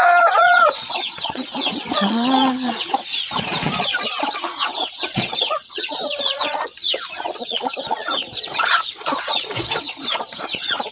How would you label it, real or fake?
fake